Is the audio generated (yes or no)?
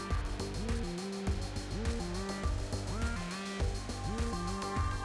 no